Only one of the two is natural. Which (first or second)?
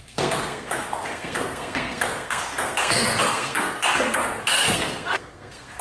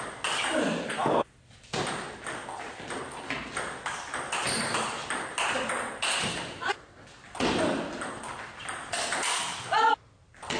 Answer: second